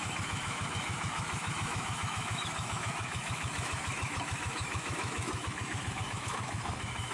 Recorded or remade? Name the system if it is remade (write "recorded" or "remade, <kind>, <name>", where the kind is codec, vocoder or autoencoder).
remade, autoencoder, DAC-VAE